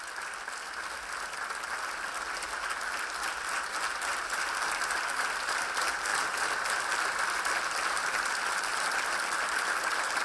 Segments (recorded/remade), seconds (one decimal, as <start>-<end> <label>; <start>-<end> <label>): 0.0-10.2 recorded